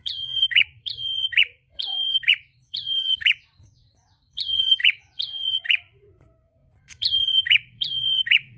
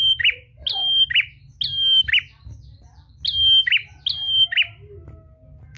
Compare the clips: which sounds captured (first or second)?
second